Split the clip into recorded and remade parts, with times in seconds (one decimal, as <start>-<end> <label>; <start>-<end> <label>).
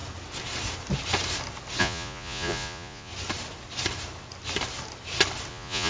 0.0-1.8 recorded; 1.8-3.1 remade; 3.1-5.5 recorded; 5.5-5.9 remade